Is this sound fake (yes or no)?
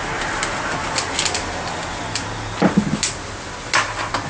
no